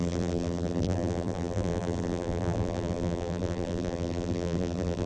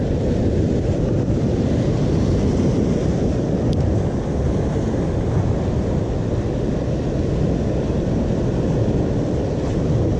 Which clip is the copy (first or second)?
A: first